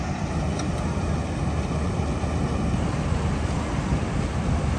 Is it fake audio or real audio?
real